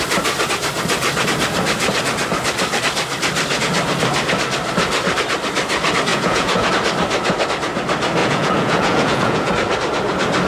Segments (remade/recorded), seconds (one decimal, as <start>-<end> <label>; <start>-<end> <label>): 0.0-6.1 recorded; 6.1-6.7 remade; 6.7-8.2 recorded; 8.2-9.5 remade; 9.5-10.5 recorded